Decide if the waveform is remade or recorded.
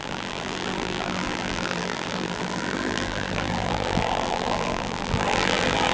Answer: remade